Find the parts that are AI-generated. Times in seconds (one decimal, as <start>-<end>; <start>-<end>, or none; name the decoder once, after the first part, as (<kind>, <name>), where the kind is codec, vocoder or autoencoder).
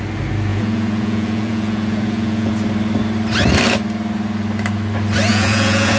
0.5-2.5 (vocoder, Vocos); 5.3-6.0